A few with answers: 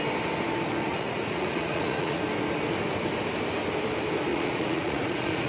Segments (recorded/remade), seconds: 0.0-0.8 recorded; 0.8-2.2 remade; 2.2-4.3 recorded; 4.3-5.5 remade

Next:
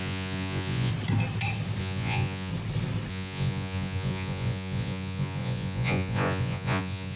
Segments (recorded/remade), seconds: 0.0-0.9 remade; 0.9-1.8 recorded; 1.8-2.5 remade; 2.5-3.1 recorded; 3.1-7.2 remade